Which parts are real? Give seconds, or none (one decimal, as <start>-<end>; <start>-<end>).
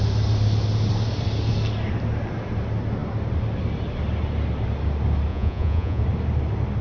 0.0-5.3; 6.0-6.8